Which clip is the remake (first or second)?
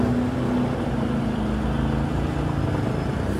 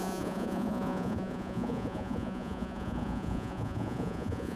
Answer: second